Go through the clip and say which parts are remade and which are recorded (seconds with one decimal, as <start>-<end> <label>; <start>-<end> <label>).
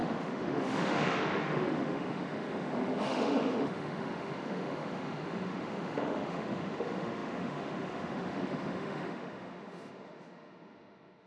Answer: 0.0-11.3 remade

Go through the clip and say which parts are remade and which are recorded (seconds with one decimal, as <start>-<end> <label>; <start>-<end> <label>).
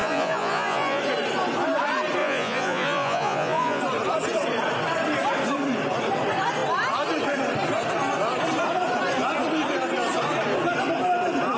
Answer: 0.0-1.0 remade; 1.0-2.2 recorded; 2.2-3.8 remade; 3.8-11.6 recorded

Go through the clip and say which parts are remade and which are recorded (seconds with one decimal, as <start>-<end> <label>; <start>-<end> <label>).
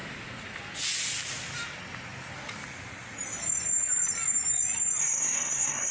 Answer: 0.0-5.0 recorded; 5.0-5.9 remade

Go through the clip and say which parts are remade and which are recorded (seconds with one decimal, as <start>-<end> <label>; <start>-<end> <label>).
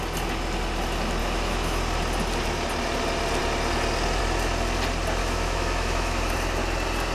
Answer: 0.0-1.2 recorded; 1.2-1.8 remade; 1.8-5.2 recorded; 5.2-6.3 remade; 6.3-7.1 recorded